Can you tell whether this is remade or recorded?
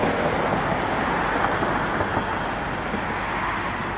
recorded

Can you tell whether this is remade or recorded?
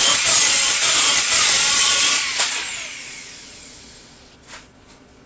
remade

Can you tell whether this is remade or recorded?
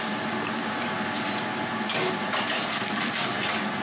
recorded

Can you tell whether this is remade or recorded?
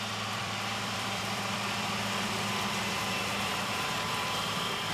remade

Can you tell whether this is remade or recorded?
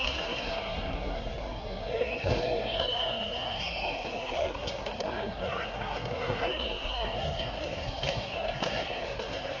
remade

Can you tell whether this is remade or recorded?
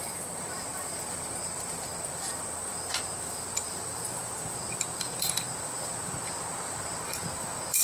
remade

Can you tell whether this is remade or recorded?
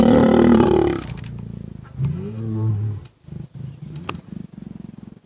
recorded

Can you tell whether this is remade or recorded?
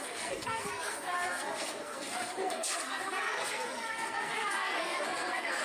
remade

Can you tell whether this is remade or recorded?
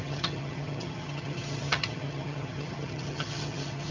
remade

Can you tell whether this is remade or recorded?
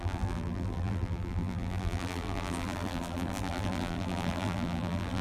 remade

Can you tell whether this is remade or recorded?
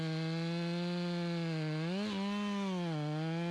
recorded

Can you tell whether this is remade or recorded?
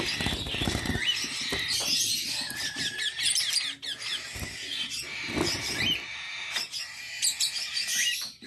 recorded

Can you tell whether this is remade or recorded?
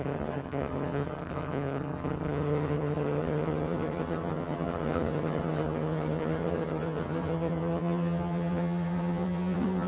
remade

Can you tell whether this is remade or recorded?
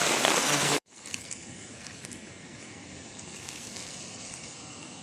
remade